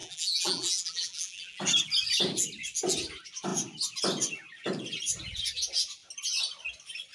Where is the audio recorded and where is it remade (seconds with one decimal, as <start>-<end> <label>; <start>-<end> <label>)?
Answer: 0.0-1.6 remade; 1.6-7.1 recorded